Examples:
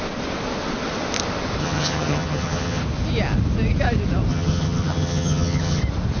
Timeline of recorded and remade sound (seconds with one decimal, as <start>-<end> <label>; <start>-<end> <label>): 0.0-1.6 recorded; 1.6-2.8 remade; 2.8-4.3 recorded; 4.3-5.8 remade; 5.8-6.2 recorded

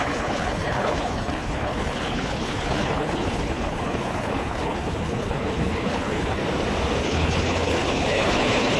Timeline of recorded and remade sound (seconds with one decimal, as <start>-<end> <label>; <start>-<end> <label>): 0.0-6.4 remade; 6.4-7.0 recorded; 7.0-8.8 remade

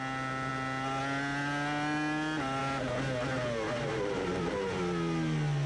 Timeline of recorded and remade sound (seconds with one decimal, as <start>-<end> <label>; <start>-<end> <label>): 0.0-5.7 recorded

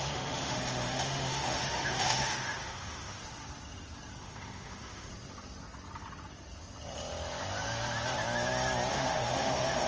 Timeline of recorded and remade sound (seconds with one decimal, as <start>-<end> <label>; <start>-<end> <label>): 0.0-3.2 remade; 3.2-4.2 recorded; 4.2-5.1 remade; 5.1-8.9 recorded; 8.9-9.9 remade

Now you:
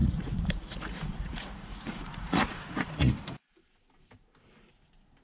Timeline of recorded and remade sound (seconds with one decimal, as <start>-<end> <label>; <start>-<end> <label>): 0.0-3.1 remade; 3.1-5.2 recorded